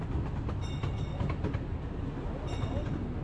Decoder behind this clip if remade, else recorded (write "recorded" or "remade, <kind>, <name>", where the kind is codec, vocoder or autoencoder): recorded